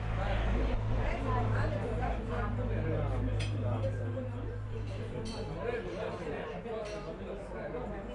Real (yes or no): yes